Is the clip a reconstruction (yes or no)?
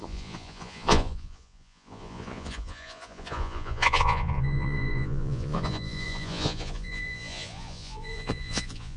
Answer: yes